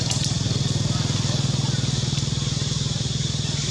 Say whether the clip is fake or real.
real